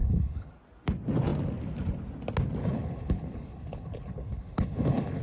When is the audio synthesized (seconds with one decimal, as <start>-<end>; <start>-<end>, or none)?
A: 0.0-0.5; 2.6-5.2